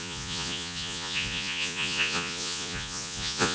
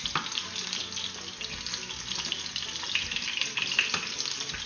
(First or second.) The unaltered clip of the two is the second